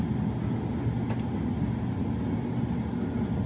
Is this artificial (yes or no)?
no